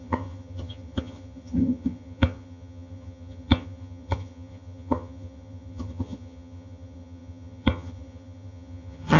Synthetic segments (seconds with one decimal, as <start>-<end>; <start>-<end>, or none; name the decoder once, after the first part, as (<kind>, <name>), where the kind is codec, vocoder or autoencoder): 0.0-9.2 (vocoder, HiFi-GAN)